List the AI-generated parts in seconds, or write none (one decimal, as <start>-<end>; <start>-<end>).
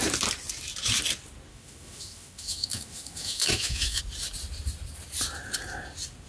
1.5-4.0